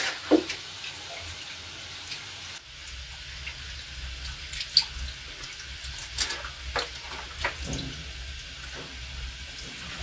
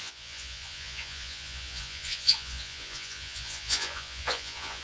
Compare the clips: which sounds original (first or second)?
first